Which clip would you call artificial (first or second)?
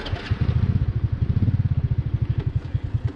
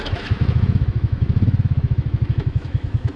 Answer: second